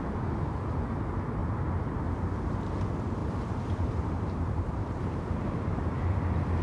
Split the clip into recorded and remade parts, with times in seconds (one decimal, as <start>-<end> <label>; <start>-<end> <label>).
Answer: 0.0-1.4 recorded; 1.4-2.5 remade; 2.5-3.2 recorded; 3.2-5.6 remade; 5.6-6.6 recorded